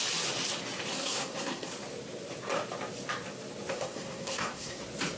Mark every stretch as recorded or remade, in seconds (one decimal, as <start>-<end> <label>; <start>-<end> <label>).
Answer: 0.0-0.9 recorded; 0.9-1.7 remade; 1.7-3.7 recorded; 3.7-4.8 remade; 4.8-5.2 recorded